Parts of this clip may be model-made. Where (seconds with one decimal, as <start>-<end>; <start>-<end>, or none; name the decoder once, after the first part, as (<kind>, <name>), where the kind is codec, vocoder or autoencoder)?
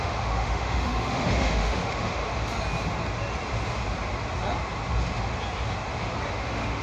0.0-2.2 (autoencoder, DAC-VAE); 6.3-6.8